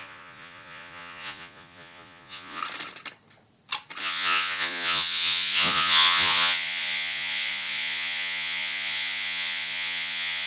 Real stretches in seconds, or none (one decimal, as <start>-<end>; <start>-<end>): 2.6-4.0